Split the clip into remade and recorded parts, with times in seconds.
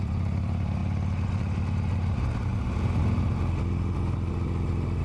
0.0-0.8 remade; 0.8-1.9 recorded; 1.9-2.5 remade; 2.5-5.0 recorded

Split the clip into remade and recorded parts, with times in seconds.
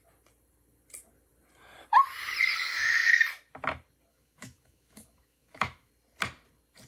0.0-4.1 recorded; 4.1-5.9 remade; 5.9-6.9 recorded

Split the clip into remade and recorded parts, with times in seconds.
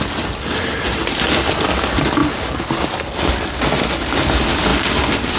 0.0-5.4 recorded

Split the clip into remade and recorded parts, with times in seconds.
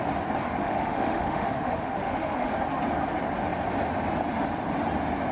0.0-0.6 recorded; 0.6-2.5 remade; 2.5-5.3 recorded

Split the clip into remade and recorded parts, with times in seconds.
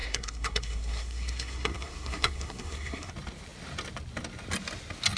0.0-3.1 remade; 3.1-5.2 recorded